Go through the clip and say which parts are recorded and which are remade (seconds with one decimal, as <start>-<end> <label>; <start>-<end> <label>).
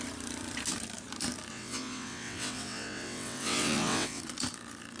0.0-1.5 recorded; 1.5-4.2 remade; 4.2-5.0 recorded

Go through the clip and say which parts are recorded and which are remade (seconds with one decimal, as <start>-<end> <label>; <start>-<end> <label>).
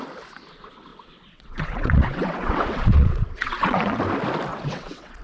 0.0-0.9 recorded; 0.9-4.0 remade; 4.0-4.5 recorded; 4.5-5.2 remade